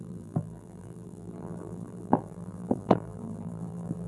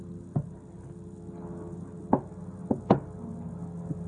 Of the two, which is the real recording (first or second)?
second